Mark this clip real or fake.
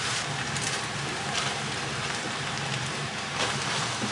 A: fake